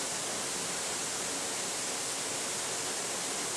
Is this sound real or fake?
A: real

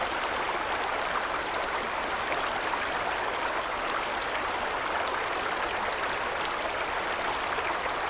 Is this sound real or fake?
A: real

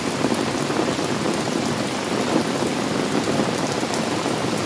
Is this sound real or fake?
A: real